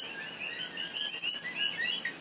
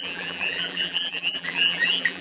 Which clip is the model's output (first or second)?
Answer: second